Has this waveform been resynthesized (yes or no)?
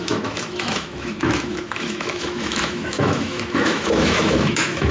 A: yes